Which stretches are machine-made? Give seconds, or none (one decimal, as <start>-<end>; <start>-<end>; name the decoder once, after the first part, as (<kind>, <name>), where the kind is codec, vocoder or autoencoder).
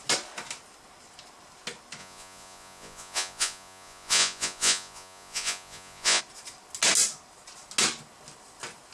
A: 2.0-6.2 (vocoder, Vocos)